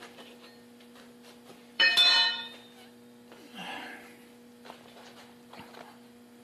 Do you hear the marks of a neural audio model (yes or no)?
yes